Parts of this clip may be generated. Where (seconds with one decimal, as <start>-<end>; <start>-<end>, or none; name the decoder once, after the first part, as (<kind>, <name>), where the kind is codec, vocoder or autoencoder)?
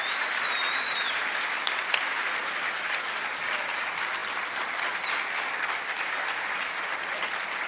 none